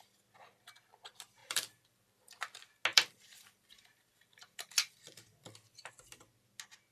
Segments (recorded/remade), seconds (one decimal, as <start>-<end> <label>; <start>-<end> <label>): 0.0-1.4 recorded; 1.4-2.3 remade; 2.3-2.9 recorded; 2.9-5.9 remade; 5.9-6.9 recorded